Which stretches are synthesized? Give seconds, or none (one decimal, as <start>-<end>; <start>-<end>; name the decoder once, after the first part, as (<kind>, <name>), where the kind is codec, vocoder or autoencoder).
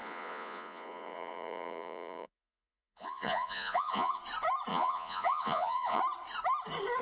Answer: 0.0-4.2 (vocoder, Vocos); 4.7-6.0